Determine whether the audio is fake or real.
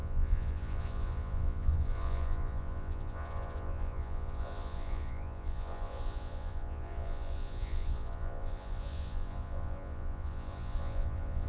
fake